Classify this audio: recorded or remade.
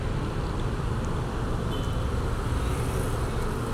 recorded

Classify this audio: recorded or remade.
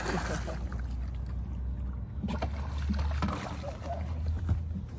recorded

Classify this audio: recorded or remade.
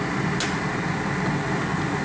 recorded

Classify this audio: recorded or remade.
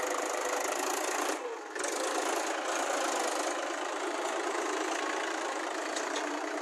recorded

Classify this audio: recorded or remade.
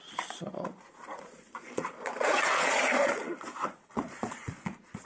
remade